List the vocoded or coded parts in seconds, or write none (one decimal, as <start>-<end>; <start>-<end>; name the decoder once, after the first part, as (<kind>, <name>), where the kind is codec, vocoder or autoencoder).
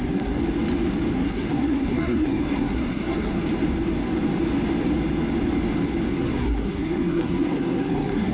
0.0-0.4 (codec, SNAC); 1.1-3.4; 6.1-8.3